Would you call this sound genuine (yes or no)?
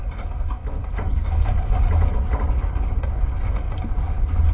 yes